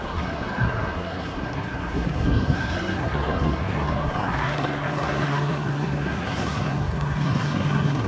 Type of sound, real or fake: fake